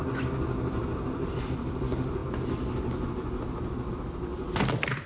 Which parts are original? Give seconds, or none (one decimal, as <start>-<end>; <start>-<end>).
2.2-3.9